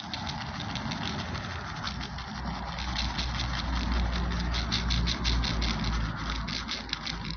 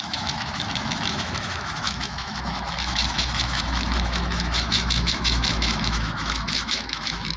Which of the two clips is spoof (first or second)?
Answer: second